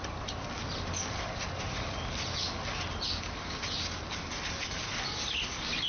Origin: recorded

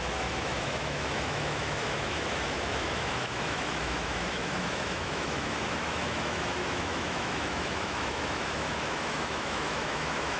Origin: remade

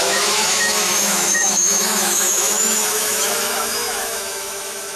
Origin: remade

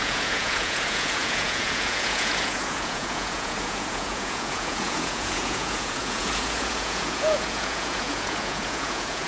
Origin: remade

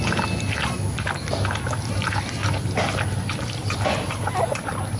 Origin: recorded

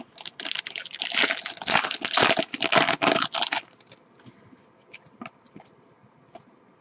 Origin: recorded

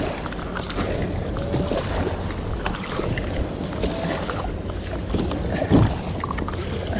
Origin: recorded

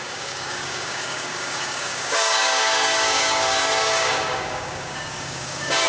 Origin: remade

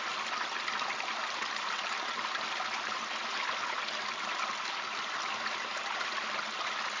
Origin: recorded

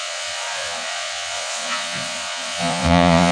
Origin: remade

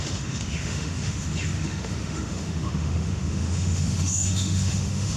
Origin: remade